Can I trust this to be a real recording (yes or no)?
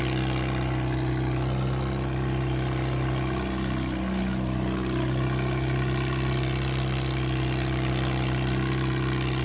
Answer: yes